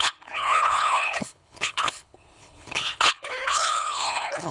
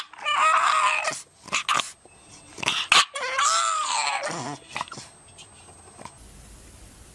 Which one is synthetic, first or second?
first